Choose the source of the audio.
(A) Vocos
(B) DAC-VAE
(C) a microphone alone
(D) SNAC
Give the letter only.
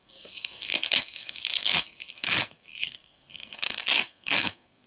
D